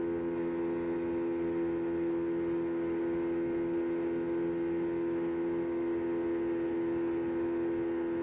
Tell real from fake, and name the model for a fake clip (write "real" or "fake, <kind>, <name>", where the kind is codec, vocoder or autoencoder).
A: real